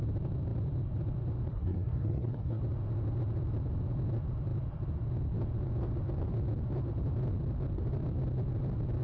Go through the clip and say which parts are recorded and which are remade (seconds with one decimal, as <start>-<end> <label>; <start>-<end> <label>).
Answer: 0.0-1.5 recorded; 1.5-2.6 remade; 2.6-9.0 recorded